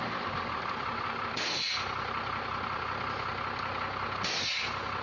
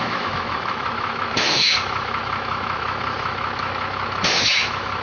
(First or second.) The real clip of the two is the first